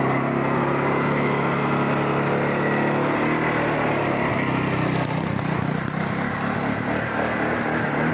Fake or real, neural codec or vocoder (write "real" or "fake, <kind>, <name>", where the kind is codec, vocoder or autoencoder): real